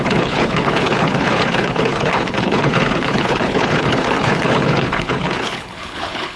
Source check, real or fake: fake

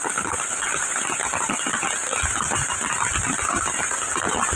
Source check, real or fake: real